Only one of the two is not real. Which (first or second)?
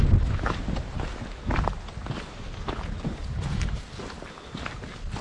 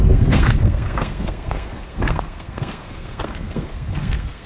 second